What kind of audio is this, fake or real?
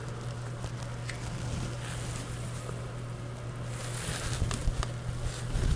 real